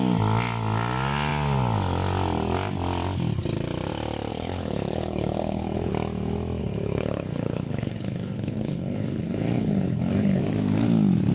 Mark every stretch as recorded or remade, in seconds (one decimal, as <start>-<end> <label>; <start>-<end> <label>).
0.0-4.3 recorded; 4.3-5.9 remade; 5.9-6.6 recorded; 6.6-10.4 remade; 10.4-11.3 recorded